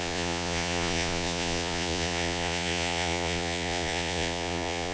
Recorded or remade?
remade